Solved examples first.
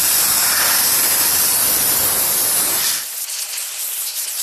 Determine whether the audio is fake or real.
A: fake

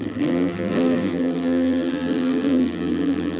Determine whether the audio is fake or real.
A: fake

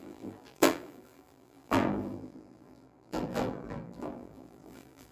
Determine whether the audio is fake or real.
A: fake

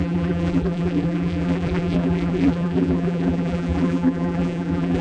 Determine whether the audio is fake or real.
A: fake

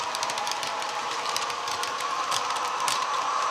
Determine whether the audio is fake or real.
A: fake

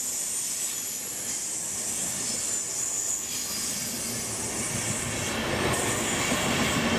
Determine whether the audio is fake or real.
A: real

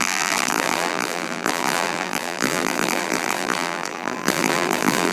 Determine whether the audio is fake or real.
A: fake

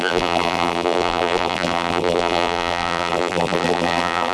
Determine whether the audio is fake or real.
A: fake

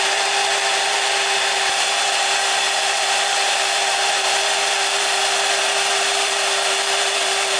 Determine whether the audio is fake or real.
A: fake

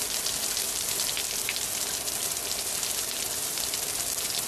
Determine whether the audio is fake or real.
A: fake